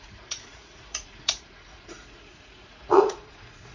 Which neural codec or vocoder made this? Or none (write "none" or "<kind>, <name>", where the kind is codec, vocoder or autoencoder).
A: vocoder, Vocos